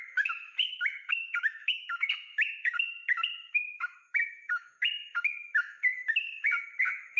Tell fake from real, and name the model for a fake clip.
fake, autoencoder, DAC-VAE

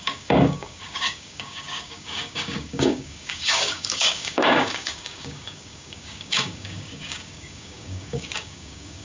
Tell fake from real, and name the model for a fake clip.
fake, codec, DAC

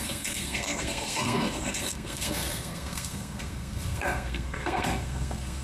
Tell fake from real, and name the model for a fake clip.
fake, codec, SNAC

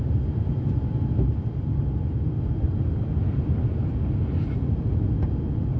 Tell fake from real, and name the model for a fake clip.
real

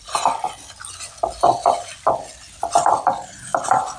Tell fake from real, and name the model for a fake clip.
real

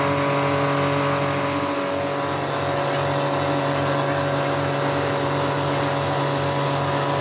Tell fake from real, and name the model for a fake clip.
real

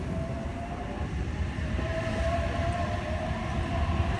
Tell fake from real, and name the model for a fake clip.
fake, vocoder, BigVGAN v2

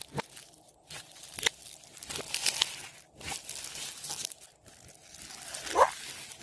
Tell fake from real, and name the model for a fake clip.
real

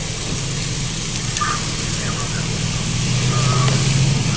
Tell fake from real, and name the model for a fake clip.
real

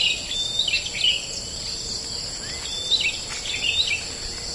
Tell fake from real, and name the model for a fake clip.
real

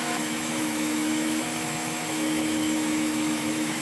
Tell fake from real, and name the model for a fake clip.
fake, autoencoder, DAC-VAE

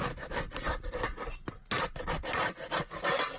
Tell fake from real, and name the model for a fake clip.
real